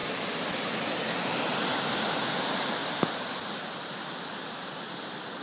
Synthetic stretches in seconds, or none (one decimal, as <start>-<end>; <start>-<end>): none